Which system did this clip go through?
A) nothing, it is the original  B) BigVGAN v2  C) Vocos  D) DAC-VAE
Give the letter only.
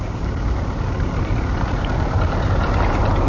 B